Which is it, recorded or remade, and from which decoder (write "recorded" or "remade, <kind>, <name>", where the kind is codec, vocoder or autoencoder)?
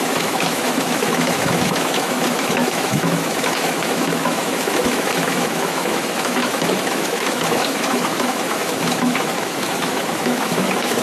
remade, autoencoder, DAC-VAE